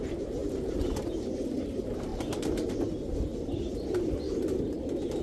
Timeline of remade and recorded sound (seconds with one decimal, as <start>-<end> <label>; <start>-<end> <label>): 0.0-2.1 recorded; 2.1-2.7 remade; 2.7-5.2 recorded